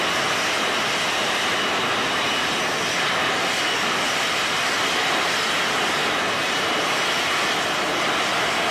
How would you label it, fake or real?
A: real